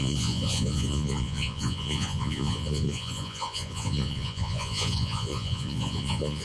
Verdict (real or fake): fake